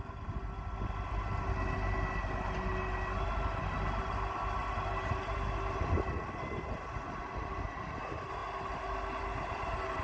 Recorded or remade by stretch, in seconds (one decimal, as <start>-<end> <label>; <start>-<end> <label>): 0.0-10.0 recorded